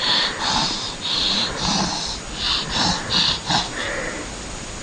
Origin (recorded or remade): recorded